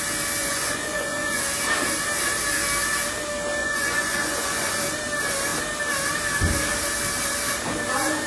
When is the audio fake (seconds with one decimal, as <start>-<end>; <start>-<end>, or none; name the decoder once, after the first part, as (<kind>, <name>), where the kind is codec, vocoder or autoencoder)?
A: 0.4-1.4 (vocoder, Vocos); 3.6-4.7